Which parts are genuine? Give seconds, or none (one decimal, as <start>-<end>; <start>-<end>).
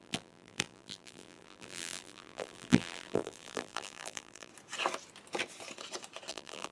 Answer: 4.5-6.3